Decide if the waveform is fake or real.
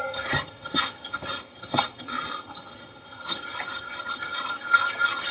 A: fake